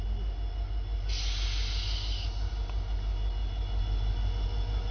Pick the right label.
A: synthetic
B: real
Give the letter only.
B